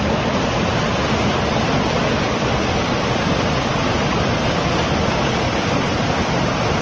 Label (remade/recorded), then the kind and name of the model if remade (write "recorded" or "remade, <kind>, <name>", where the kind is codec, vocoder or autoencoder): recorded